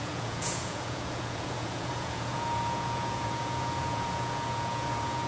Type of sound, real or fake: fake